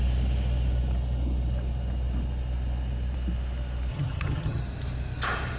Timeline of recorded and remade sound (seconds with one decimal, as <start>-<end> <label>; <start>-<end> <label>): 0.0-3.9 recorded; 3.9-4.6 remade; 4.6-5.6 recorded